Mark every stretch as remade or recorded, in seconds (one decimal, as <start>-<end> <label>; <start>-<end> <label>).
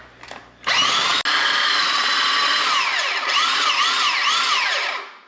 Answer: 0.0-5.3 recorded